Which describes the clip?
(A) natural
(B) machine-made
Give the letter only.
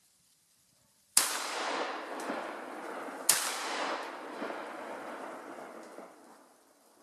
A